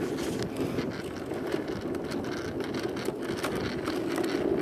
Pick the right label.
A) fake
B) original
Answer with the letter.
B